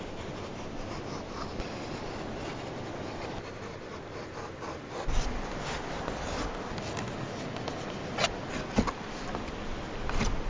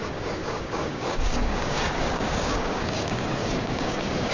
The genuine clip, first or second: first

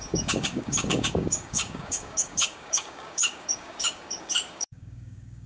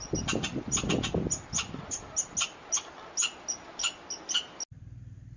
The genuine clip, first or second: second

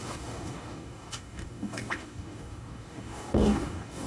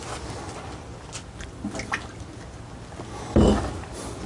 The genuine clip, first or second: second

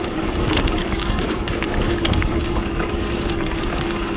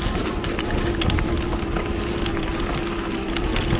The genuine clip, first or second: second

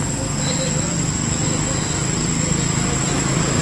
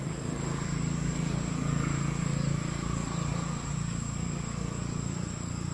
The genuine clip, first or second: first